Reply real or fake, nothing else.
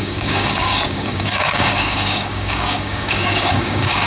fake